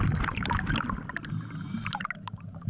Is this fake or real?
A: real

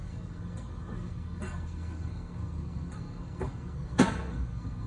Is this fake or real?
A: fake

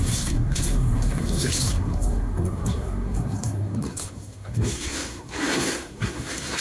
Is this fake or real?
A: fake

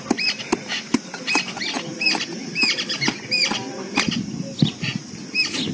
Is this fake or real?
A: real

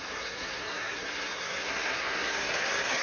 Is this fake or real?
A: fake